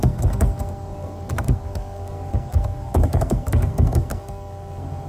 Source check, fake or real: fake